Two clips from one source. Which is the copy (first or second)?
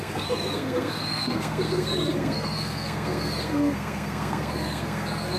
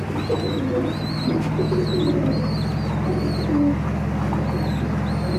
first